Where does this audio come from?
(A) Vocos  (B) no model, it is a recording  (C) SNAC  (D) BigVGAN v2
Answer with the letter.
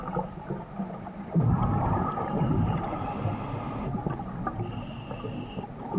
B